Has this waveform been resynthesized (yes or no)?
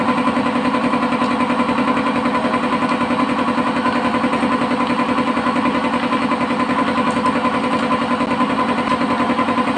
no